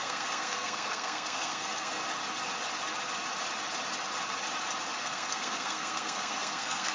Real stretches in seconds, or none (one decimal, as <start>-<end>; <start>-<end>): 2.0-5.0